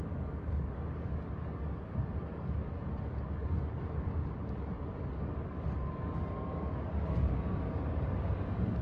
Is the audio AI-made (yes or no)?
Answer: yes